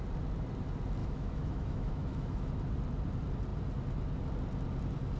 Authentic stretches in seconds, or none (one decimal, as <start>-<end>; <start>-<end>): 0.0-1.0; 2.5-5.2